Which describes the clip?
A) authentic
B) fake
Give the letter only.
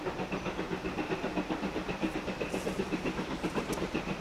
A